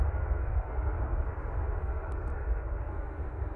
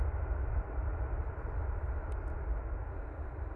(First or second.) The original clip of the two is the second